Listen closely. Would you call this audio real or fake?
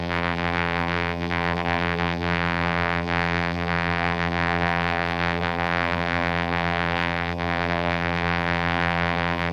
fake